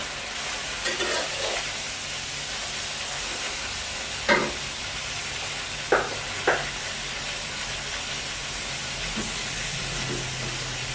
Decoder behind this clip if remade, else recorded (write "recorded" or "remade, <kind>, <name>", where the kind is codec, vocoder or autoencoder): recorded